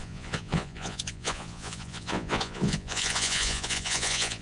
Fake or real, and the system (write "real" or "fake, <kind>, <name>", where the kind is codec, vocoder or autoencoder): fake, vocoder, Vocos